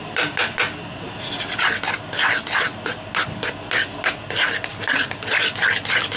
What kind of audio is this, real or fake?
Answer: real